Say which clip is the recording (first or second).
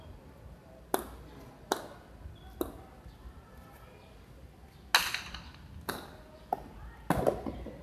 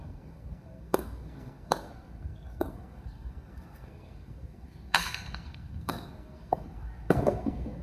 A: first